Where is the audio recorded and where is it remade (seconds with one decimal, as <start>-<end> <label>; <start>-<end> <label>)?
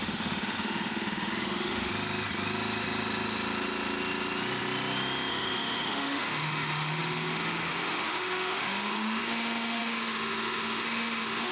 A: 0.0-1.9 remade; 1.9-5.3 recorded; 5.3-11.5 remade